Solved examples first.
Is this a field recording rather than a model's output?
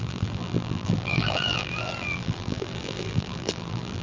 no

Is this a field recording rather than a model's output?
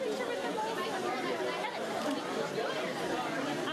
yes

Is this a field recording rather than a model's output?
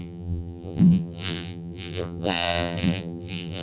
no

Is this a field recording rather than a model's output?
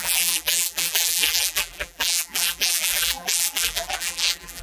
no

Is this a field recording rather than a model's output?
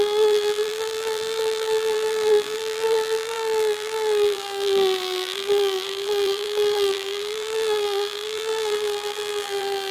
no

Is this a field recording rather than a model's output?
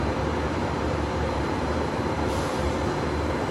no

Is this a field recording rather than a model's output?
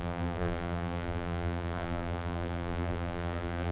no